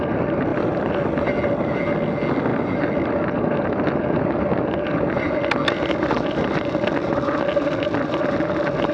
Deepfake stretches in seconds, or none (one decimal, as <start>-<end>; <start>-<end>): 2.5-3.4; 7.0-8.9